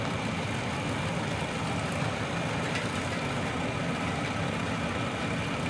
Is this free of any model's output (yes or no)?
yes